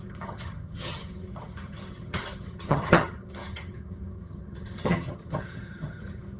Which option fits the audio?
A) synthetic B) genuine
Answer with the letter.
A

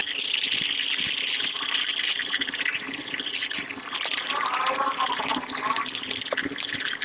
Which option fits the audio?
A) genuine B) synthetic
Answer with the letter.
A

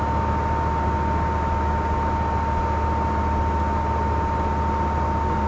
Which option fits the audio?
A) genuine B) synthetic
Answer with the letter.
A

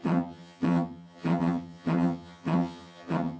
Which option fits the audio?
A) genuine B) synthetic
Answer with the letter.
B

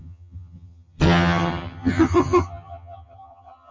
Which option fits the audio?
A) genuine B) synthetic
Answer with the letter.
B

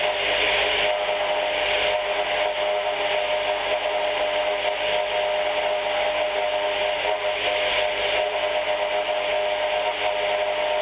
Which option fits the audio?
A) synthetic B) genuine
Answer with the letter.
B